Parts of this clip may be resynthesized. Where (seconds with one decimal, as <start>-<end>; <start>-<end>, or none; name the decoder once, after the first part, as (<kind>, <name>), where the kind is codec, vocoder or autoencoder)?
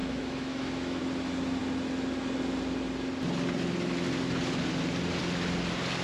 0.0-1.0 (autoencoder, DAC-VAE)